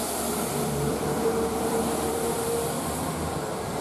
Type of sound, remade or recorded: remade